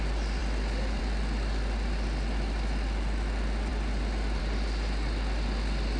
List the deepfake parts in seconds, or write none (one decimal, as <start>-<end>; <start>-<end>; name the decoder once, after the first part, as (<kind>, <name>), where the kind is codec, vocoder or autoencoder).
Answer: none